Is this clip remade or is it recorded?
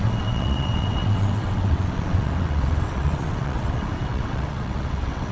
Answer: remade